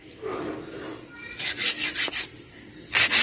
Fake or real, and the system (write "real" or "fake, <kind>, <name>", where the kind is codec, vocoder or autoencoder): real